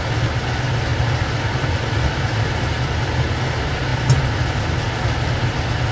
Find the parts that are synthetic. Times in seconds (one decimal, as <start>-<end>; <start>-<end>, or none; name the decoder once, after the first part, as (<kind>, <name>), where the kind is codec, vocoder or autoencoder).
none